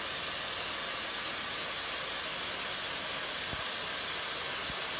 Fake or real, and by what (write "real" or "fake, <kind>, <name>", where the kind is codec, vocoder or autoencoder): real